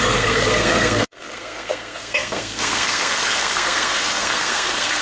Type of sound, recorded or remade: remade